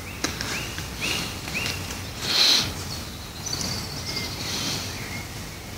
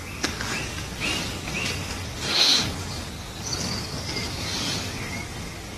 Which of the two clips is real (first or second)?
first